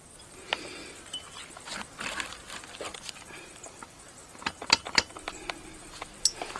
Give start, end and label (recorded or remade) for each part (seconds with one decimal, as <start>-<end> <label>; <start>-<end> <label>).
0.0-2.9 recorded; 2.9-6.1 remade; 6.1-6.6 recorded